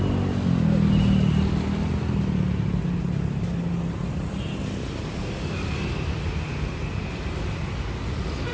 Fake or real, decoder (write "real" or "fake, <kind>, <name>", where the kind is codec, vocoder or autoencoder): real